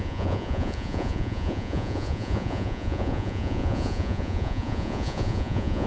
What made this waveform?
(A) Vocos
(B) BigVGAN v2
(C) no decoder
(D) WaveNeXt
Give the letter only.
A